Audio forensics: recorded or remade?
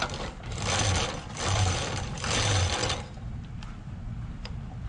recorded